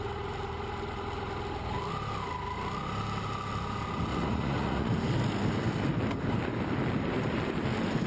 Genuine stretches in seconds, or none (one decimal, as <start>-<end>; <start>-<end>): 0.0-4.1; 4.9-8.1